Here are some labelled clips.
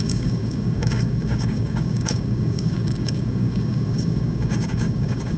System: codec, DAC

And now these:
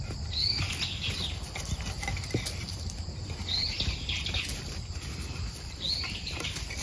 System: none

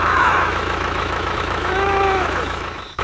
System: autoencoder, DAC-VAE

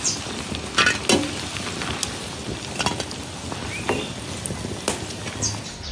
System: none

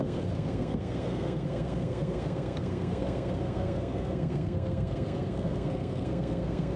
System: codec, SNAC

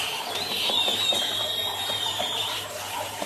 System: vocoder, BigVGAN v2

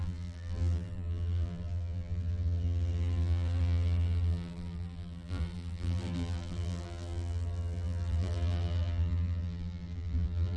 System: vocoder, BigVGAN v2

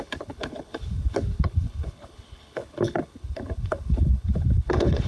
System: codec, HILCodec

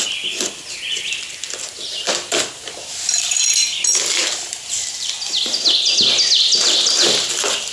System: none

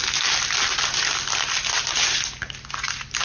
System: none